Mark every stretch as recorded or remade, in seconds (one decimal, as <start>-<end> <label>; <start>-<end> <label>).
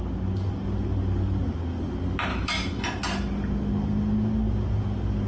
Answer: 0.0-2.3 recorded; 2.3-2.8 remade; 2.8-5.3 recorded